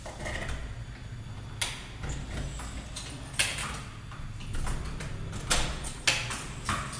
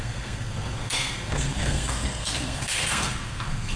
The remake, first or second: second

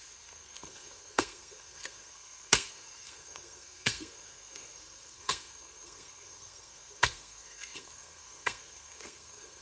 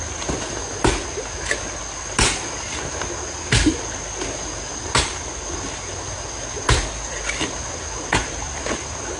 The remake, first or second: first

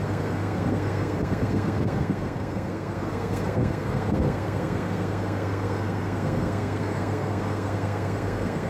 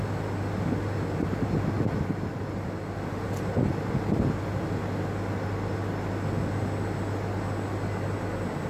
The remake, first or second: first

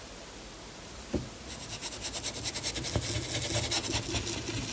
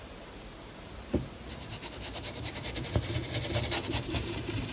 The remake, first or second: second